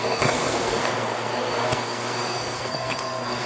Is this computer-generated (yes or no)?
yes